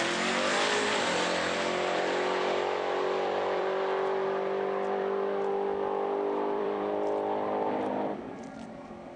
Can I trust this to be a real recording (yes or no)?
no